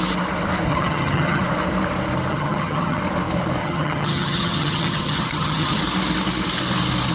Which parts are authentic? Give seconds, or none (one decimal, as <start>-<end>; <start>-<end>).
0.0-0.7; 1.4-2.3; 3.0-3.6; 5.8-7.1